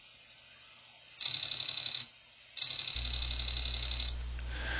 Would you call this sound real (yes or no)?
yes